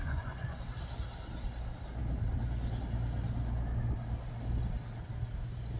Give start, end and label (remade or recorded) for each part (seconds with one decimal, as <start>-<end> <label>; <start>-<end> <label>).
0.0-0.6 remade; 0.6-5.8 recorded